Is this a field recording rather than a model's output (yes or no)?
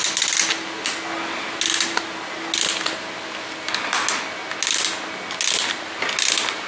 yes